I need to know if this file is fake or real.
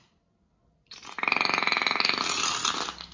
real